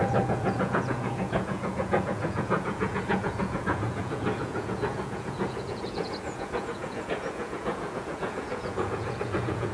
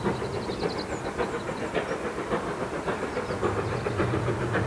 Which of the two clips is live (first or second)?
second